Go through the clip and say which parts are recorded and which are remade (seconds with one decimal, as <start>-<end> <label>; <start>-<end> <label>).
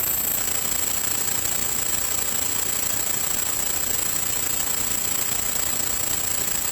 0.0-6.7 recorded